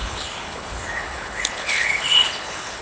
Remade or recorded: remade